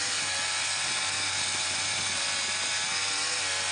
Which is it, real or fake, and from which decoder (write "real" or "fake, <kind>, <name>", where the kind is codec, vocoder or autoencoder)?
real